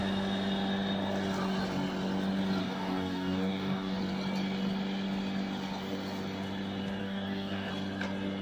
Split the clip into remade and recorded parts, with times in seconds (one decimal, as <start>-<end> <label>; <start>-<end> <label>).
0.0-2.6 recorded; 2.6-4.0 remade; 4.0-7.0 recorded; 7.0-7.7 remade; 7.7-8.4 recorded